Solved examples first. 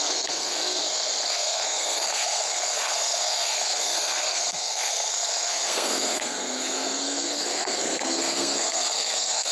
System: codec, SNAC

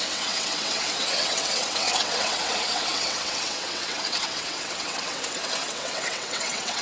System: vocoder, WaveNeXt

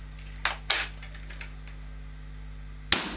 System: none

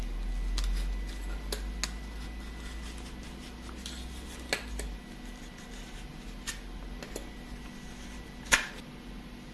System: none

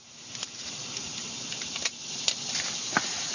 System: none